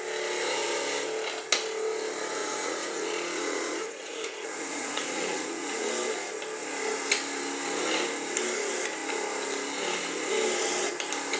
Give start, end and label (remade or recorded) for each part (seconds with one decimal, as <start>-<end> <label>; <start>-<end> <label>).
0.0-2.4 recorded; 2.4-5.9 remade; 5.9-11.4 recorded